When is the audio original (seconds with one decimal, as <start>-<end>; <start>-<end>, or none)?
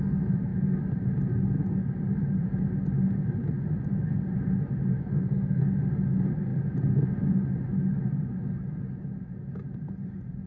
0.0-5.0; 5.6-10.5